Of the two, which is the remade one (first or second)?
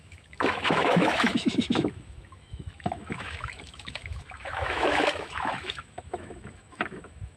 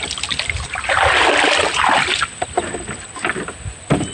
first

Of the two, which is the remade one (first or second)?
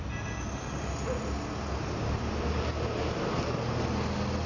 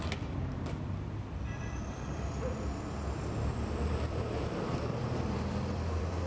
second